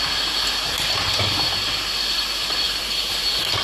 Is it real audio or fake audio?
real